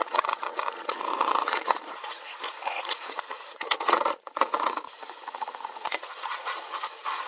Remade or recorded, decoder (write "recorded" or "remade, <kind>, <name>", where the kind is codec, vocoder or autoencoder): remade, vocoder, Vocos